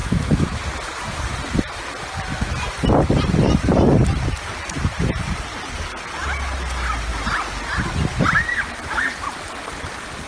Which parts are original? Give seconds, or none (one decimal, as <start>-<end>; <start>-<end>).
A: 0.6-10.3

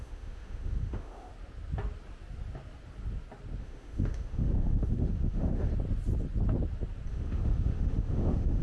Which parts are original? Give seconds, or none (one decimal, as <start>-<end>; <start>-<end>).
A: 1.3-3.6; 5.7-7.1

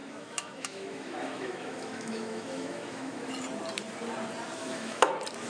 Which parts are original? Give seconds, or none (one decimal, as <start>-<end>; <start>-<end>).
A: 3.3-4.6; 5.1-5.5

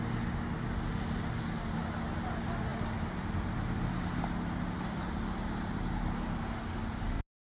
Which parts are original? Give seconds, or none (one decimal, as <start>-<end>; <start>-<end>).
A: 0.0-7.6

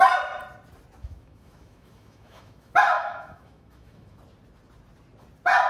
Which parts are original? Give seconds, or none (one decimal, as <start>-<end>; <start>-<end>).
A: 0.0-1.0; 4.2-5.7